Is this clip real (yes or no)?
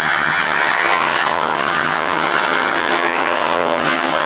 no